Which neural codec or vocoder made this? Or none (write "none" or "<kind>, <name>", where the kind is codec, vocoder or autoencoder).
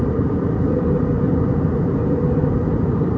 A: vocoder, BigVGAN v2